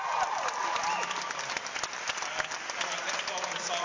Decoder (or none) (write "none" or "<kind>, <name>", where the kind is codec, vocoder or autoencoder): none